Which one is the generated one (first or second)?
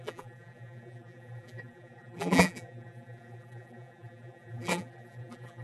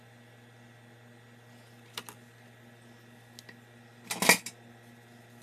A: first